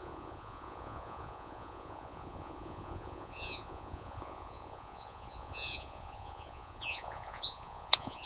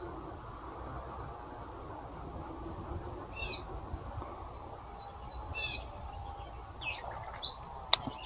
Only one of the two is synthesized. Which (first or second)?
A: first